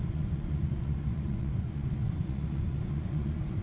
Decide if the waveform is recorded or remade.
remade